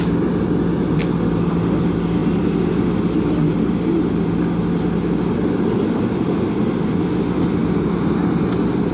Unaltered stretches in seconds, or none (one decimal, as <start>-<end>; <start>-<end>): 0.0-8.9